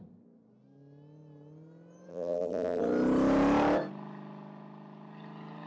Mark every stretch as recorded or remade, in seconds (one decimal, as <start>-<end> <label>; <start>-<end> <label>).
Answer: 0.0-2.1 recorded; 2.1-2.8 remade; 2.8-5.7 recorded